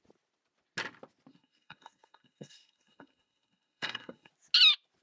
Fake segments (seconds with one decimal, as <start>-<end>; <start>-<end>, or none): 1.3-4.3